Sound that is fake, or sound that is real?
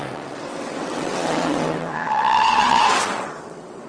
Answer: fake